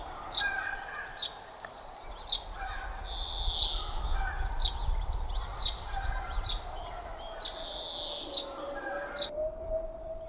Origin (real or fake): real